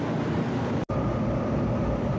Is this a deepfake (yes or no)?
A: yes